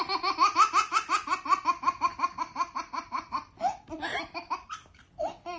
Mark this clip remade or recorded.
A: recorded